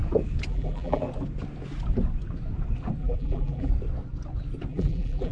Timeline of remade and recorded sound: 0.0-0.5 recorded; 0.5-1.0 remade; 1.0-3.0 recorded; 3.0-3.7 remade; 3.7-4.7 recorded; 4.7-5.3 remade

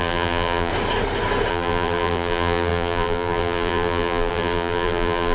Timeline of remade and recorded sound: 0.0-0.7 remade; 0.7-1.5 recorded; 1.5-5.3 remade